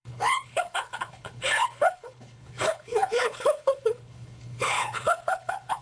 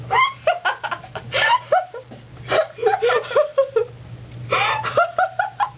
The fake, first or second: first